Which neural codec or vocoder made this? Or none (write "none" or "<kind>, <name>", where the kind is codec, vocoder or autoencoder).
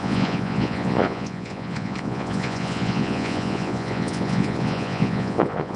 vocoder, Vocos